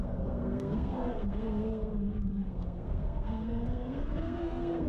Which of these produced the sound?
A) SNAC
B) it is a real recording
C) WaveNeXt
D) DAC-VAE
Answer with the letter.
A